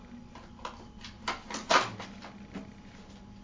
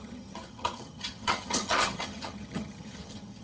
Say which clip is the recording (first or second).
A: first